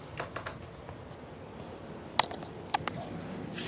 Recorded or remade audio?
recorded